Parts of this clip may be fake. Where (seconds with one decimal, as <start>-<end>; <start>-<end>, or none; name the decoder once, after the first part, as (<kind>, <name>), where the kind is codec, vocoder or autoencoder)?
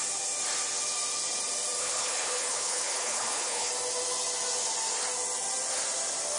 1.8-3.7 (codec, HILCodec)